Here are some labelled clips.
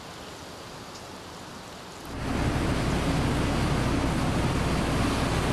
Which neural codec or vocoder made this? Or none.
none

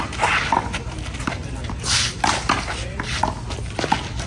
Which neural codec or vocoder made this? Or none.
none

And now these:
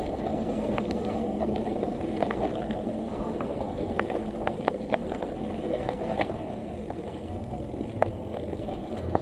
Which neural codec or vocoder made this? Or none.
codec, SNAC